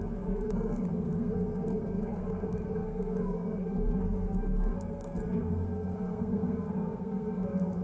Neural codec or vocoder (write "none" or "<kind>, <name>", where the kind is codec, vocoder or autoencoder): codec, SNAC